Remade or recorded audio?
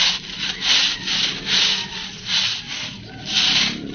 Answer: recorded